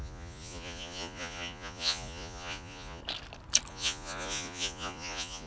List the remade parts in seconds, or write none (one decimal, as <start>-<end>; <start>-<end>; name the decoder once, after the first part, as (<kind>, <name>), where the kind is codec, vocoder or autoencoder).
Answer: 0.0-3.0 (vocoder, Vocos); 3.7-5.5